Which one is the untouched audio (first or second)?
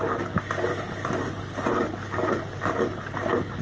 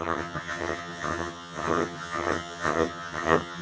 first